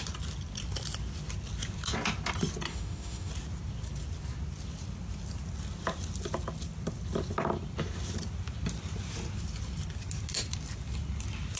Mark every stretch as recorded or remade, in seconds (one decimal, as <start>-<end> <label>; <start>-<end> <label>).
0.0-2.7 recorded; 2.7-3.3 remade; 3.3-11.6 recorded